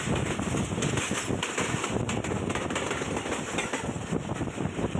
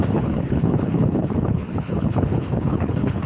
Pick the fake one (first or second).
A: second